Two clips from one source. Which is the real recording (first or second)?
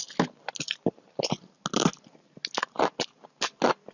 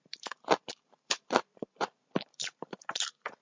first